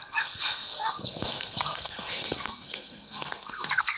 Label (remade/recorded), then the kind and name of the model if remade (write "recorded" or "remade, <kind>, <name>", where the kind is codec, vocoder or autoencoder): remade, codec, SNAC